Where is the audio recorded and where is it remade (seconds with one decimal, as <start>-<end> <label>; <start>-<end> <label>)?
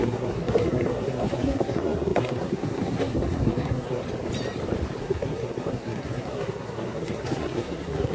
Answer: 0.0-4.0 remade; 4.0-5.0 recorded; 5.0-8.1 remade